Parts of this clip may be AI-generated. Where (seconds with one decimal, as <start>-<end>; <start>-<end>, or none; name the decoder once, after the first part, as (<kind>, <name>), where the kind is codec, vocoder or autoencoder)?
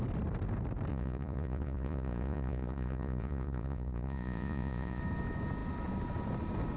0.9-5.0 (vocoder, Vocos)